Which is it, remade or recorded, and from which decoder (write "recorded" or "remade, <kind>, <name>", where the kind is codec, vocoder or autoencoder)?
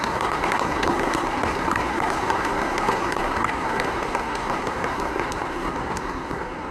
remade, codec, SNAC